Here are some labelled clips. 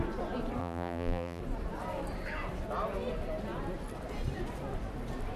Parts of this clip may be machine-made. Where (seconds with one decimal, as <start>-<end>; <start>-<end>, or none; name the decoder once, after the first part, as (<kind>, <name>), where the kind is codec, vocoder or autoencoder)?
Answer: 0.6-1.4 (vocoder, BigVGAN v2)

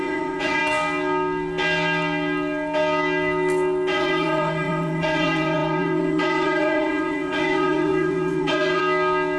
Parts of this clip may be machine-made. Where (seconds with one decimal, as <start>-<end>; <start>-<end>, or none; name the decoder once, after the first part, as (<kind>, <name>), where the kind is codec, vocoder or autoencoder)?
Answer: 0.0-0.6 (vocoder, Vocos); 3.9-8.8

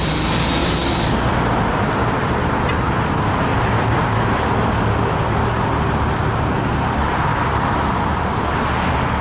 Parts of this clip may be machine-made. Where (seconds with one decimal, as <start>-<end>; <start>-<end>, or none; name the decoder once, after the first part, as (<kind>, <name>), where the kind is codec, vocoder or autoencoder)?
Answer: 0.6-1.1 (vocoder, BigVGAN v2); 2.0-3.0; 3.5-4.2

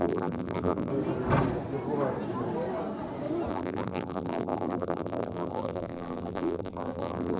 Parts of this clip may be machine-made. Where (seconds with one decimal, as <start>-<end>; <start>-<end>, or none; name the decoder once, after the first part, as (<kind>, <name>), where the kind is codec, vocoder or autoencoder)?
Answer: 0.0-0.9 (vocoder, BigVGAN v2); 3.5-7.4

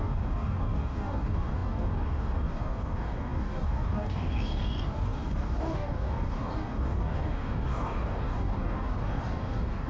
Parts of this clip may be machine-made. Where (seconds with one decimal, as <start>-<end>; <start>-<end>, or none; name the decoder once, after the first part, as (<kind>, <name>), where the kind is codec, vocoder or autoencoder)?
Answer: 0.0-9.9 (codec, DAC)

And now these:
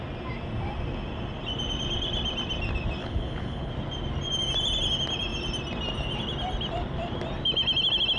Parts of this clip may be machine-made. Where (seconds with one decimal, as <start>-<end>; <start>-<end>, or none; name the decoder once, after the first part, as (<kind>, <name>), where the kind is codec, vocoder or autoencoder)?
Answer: 3.0-3.7 (codec, HILCodec)

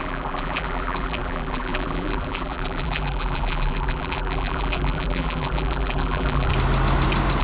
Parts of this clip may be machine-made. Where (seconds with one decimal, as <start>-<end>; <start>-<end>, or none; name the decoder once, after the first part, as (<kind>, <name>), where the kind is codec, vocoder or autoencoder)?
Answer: 0.0-6.5 (vocoder, BigVGAN v2)